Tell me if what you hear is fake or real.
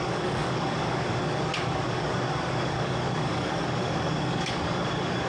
fake